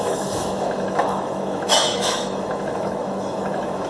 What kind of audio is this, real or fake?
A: fake